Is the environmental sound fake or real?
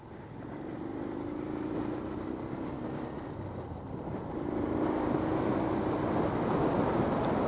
real